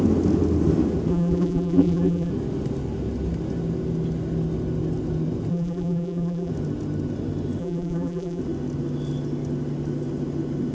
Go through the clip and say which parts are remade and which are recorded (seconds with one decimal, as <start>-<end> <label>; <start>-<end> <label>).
0.0-1.1 recorded; 1.1-2.3 remade; 2.3-5.5 recorded; 5.5-6.5 remade; 6.5-7.6 recorded; 7.6-8.4 remade; 8.4-10.7 recorded